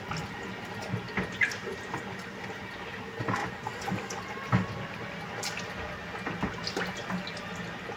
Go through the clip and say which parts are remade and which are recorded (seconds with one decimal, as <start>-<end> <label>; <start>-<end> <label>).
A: 0.0-8.0 recorded